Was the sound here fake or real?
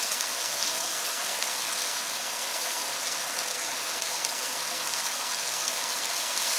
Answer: fake